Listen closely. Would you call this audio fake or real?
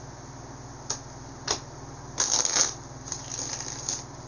real